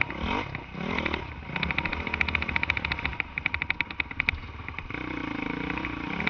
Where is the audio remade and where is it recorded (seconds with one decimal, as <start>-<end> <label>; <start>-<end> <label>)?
0.0-6.3 recorded